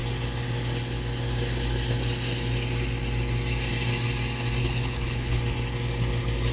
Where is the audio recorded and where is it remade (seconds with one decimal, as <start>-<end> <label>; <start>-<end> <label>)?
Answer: 0.0-4.6 recorded; 4.6-5.4 remade; 5.4-6.5 recorded